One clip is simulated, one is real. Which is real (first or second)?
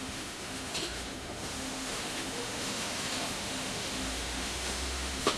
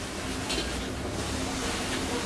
second